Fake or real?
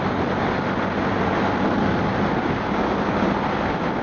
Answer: real